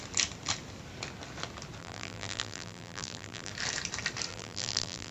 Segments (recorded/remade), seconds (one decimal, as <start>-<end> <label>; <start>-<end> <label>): 0.0-1.8 recorded; 1.8-3.5 remade; 3.5-4.3 recorded; 4.3-5.1 remade